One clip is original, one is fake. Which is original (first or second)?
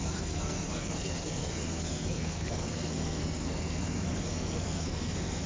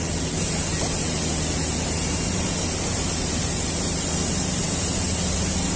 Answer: second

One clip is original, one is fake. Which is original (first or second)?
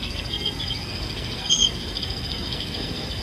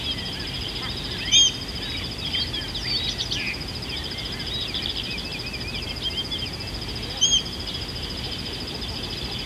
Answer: second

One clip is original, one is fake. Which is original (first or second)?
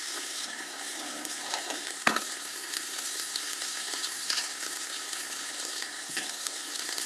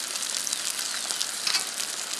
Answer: second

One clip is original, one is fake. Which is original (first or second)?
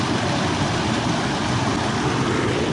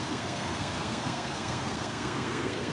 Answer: first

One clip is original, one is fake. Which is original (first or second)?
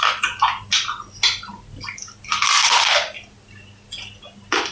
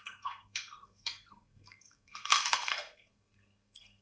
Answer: first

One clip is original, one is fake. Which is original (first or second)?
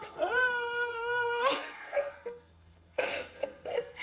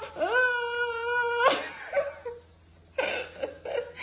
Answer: second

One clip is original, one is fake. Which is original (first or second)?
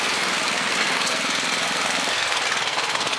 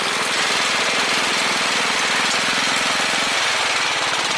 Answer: second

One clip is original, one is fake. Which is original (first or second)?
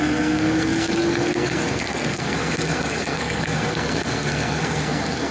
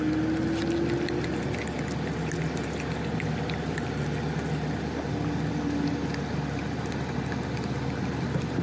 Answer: second